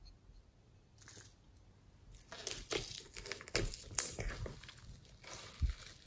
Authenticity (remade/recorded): recorded